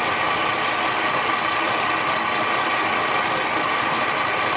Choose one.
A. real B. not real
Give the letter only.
A